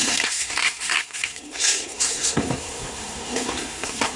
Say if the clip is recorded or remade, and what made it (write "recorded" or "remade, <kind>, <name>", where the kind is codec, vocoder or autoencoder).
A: remade, codec, SNAC